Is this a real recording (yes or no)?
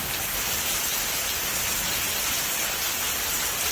yes